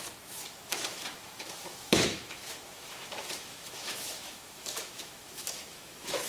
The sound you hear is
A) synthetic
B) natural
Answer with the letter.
A